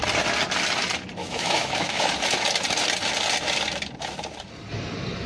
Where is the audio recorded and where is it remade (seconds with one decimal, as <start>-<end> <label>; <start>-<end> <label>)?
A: 0.0-1.2 recorded; 1.2-2.1 remade; 2.1-5.3 recorded